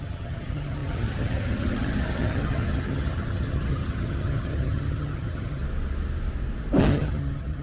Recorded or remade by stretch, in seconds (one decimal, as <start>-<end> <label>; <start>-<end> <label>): 0.0-5.6 remade; 5.6-6.8 recorded; 6.8-7.6 remade